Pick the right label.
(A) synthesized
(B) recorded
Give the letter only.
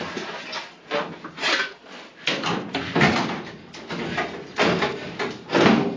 B